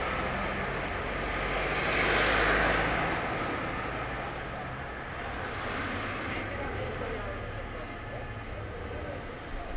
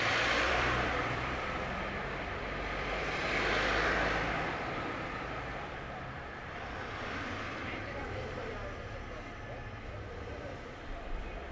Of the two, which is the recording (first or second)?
first